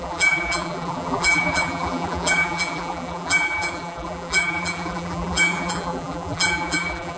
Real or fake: fake